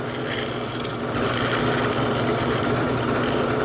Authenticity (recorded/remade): remade